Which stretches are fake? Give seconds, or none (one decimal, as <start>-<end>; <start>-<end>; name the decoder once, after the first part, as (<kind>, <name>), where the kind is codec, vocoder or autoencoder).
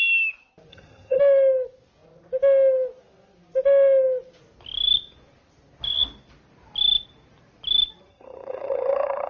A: 0.7-1.2 (vocoder, HiFi-GAN); 8.1-9.3